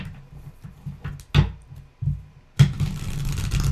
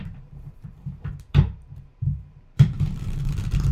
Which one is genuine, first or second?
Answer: first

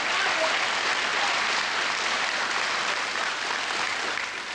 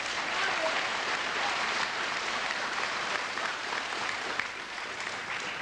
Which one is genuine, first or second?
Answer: first